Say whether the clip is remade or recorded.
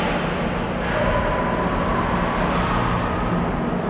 recorded